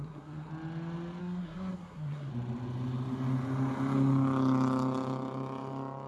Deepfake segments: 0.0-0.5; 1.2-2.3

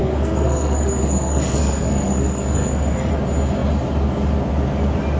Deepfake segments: 0.0-3.1

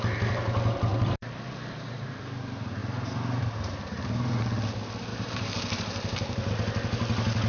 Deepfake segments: 0.9-2.1; 2.8-3.7; 5.1-6.5

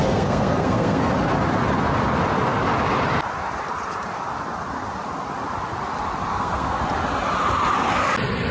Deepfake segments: 0.0-1.1; 6.3-6.8